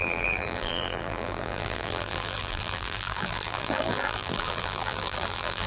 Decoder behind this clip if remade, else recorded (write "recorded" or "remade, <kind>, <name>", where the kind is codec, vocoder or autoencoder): remade, vocoder, BigVGAN v2